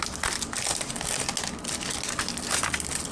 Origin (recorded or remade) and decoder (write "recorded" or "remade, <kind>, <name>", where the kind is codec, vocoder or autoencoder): recorded